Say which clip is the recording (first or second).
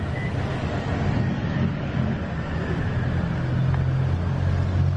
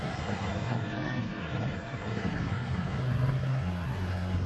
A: first